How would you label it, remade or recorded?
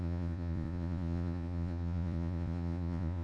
remade